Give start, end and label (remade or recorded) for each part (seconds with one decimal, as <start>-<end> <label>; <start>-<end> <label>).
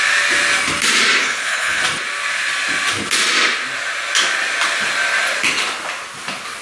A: 0.0-1.2 recorded; 1.2-1.8 remade; 1.8-6.6 recorded